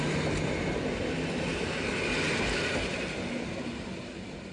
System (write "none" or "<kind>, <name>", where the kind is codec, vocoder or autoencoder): none